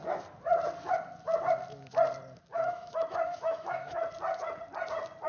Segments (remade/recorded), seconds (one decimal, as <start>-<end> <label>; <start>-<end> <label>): 0.0-2.5 recorded; 2.5-4.0 remade; 4.0-5.3 recorded